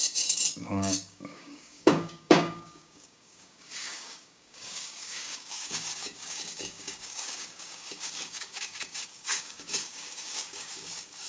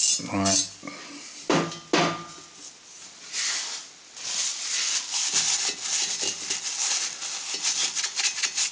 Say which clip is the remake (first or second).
first